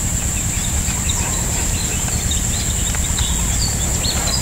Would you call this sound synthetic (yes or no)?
no